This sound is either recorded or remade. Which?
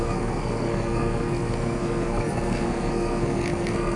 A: remade